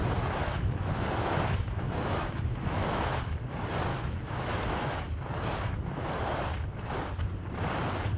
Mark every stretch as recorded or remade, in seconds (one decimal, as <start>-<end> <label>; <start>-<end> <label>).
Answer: 0.0-0.4 recorded; 0.4-3.0 remade; 3.0-3.9 recorded; 3.9-5.1 remade; 5.1-8.2 recorded

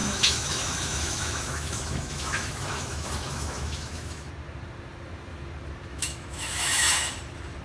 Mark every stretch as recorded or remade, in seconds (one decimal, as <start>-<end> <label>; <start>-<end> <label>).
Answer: 0.0-4.3 remade; 4.3-5.9 recorded; 5.9-7.1 remade; 7.1-7.6 recorded

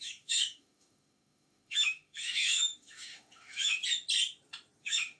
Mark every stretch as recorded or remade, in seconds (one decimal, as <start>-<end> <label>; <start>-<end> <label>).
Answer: 0.0-3.8 remade; 3.8-4.8 recorded; 4.8-5.2 remade

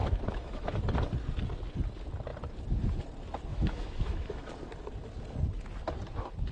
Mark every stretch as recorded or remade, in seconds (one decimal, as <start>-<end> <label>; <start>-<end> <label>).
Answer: 0.0-0.8 remade; 0.8-3.5 recorded; 3.5-4.5 remade; 4.5-6.5 recorded

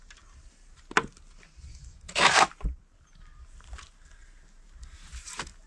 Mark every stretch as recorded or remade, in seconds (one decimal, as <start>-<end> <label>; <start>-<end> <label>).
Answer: 0.0-1.7 recorded; 1.7-2.5 remade; 2.5-5.7 recorded

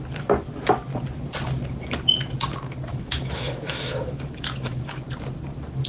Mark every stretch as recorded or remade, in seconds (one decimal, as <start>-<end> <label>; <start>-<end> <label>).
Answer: 0.0-2.9 recorded; 2.9-5.0 remade; 5.0-5.9 recorded

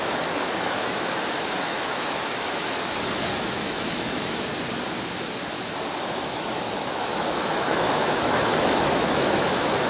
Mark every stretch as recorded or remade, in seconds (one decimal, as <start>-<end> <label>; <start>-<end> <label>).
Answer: 0.0-4.5 remade; 4.5-6.0 recorded; 6.0-9.9 remade